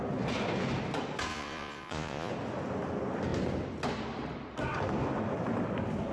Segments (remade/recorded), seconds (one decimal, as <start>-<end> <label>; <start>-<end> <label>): 0.0-1.3 recorded; 1.3-2.3 remade; 2.3-6.1 recorded